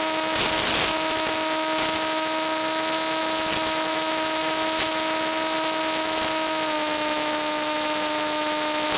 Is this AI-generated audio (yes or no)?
no